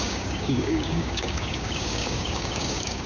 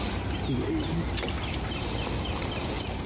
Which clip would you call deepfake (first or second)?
first